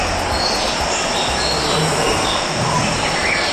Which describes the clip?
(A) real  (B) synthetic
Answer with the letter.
A